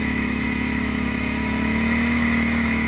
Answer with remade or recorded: remade